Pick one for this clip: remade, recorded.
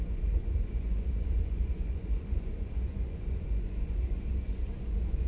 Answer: remade